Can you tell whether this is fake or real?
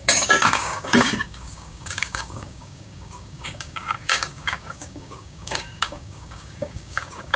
fake